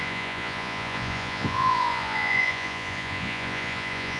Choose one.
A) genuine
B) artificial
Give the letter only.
B